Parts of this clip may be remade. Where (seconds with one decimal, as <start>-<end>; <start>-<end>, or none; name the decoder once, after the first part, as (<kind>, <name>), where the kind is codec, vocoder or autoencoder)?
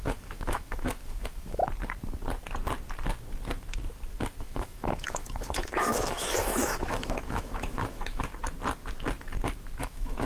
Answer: 0.0-1.6 (autoencoder, DAC-VAE); 4.4-8.3; 9.8-10.3